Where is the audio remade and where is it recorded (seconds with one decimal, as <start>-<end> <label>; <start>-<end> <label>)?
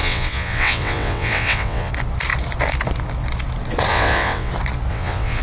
0.0-1.9 remade; 1.9-3.9 recorded; 3.9-4.5 remade; 4.5-4.9 recorded; 4.9-5.4 remade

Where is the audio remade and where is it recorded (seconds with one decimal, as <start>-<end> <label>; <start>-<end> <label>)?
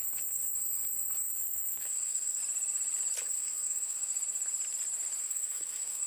0.0-0.5 remade; 0.5-1.2 recorded; 1.2-2.4 remade; 2.4-3.2 recorded; 3.2-4.1 remade; 4.1-5.2 recorded; 5.2-6.1 remade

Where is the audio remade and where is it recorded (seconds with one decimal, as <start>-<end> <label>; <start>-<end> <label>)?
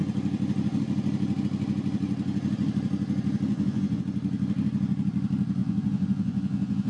0.0-3.5 recorded; 3.5-4.0 remade; 4.0-5.6 recorded; 5.6-6.9 remade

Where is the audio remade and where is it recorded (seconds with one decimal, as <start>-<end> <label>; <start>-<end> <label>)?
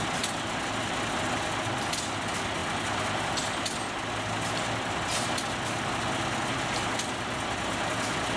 0.0-8.4 recorded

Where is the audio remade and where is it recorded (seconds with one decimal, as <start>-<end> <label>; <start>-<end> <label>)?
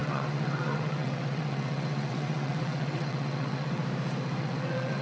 0.0-3.8 remade; 3.8-4.4 recorded; 4.4-5.0 remade